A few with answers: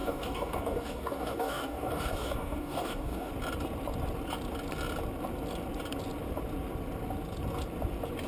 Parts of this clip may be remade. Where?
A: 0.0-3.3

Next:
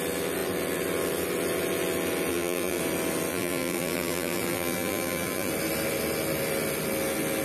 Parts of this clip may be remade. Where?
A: 2.3-2.8; 3.3-5.5

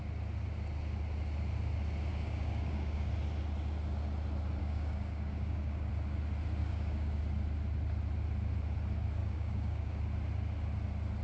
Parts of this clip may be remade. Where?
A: 2.1-3.1; 4.6-5.9; 6.6-7.2; 9.2-10.0

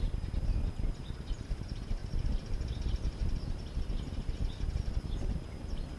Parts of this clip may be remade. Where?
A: 0.0-6.0

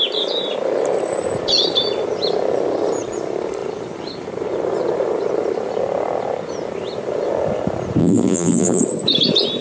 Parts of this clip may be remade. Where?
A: 8.0-8.8